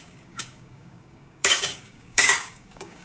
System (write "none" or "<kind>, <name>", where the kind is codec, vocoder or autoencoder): codec, DAC